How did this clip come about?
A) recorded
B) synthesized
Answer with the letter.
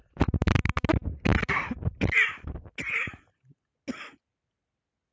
A